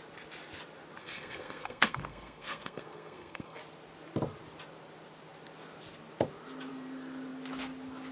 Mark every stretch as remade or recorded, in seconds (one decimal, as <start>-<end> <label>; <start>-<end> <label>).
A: 0.0-1.0 recorded; 1.0-3.6 remade; 3.6-8.1 recorded